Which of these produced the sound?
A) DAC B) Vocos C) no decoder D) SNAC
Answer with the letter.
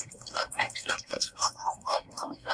D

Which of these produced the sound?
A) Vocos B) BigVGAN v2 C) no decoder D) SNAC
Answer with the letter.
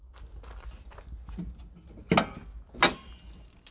C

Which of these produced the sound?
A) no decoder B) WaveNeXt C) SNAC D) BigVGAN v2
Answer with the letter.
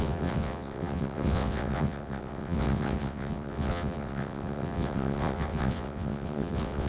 B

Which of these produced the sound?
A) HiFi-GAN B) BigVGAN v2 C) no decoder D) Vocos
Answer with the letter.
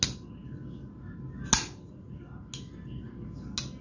C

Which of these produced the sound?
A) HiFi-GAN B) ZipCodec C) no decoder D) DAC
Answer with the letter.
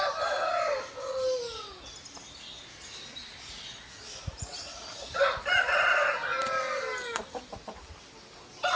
C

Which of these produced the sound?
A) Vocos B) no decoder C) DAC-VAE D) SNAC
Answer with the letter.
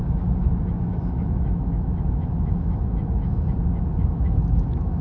C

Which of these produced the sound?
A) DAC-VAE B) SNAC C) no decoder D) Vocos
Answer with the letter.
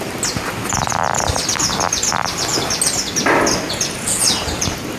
C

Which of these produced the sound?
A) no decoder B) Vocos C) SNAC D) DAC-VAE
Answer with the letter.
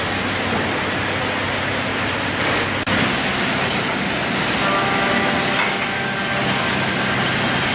A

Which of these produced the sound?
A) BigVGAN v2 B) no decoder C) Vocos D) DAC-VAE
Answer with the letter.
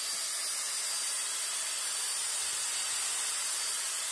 B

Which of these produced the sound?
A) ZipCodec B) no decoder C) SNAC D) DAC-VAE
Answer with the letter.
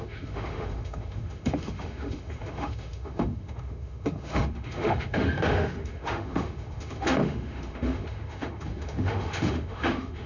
D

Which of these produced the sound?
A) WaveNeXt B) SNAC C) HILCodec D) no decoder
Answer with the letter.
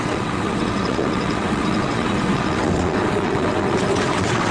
A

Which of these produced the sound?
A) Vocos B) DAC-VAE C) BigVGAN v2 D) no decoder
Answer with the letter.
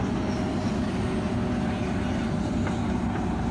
D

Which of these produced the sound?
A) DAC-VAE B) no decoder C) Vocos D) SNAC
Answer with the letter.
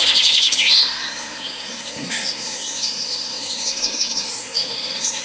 D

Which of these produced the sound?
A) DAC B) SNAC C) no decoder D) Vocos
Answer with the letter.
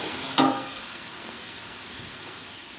B